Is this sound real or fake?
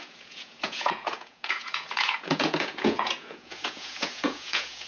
fake